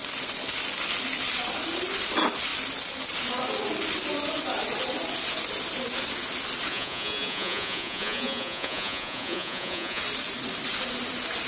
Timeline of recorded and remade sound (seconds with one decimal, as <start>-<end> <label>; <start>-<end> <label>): 0.0-6.7 recorded; 6.7-10.0 remade; 10.0-11.5 recorded